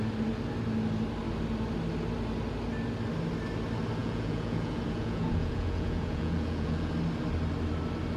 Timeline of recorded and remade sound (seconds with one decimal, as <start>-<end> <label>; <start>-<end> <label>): 0.0-4.0 recorded; 4.0-6.9 remade; 6.9-8.2 recorded